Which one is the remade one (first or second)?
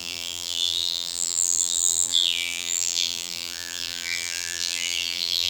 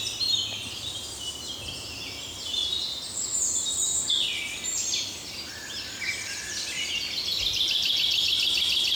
first